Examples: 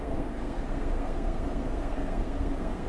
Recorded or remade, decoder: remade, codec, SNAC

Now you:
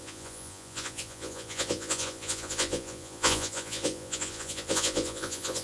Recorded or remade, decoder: remade, vocoder, Vocos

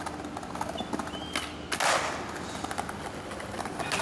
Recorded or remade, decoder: recorded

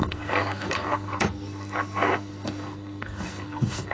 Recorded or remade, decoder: remade, codec, SNAC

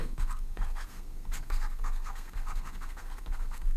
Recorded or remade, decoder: remade, codec, SNAC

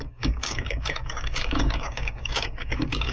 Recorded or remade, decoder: remade, codec, DAC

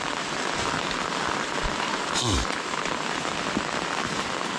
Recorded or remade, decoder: recorded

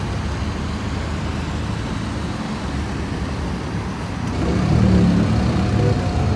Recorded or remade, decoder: recorded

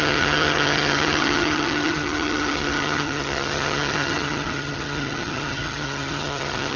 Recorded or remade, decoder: remade, vocoder, HiFi-GAN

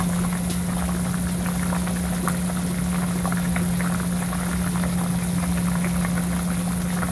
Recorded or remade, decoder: recorded